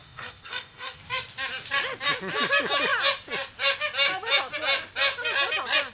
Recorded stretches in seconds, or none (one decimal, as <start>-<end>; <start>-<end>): 1.0-5.9